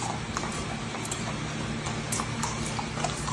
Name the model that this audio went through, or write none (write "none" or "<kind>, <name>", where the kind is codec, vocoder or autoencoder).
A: none